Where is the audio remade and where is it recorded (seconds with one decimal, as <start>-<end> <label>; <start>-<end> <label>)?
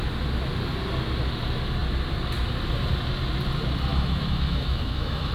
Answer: 0.0-3.9 recorded; 3.9-5.3 remade